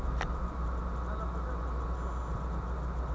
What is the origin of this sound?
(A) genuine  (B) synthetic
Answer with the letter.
A